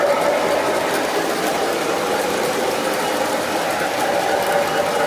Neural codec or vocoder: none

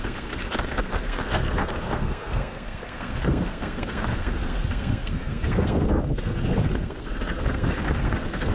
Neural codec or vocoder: codec, SNAC